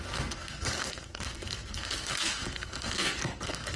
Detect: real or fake fake